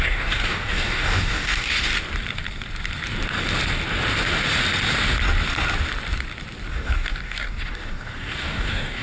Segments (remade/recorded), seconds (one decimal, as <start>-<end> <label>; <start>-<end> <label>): 0.0-1.9 remade; 1.9-6.7 recorded; 6.7-9.0 remade